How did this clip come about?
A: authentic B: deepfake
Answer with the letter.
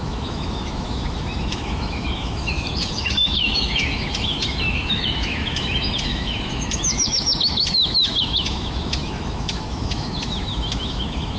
B